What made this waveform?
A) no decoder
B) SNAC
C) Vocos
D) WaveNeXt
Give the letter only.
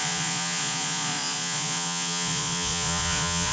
C